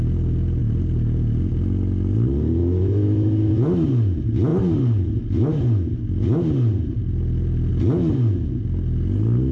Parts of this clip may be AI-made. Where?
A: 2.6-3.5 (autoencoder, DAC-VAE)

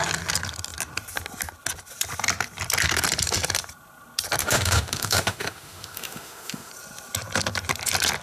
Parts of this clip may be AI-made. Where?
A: 4.4-6.7 (autoencoder, DAC-VAE)

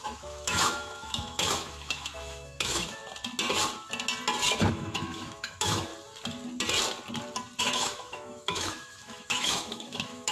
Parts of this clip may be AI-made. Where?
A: 0.0-3.0 (autoencoder, DAC-VAE); 4.7-5.9; 7.6-10.3

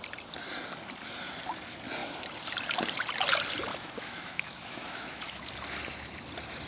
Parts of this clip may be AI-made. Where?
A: 3.7-5.4 (autoencoder, DAC-VAE)

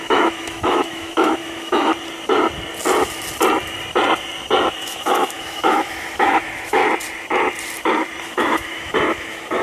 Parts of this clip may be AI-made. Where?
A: 0.0-1.9 (autoencoder, DAC-VAE); 4.7-6.8; 8.2-9.6